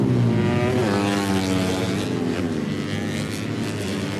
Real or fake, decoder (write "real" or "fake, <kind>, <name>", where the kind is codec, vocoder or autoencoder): real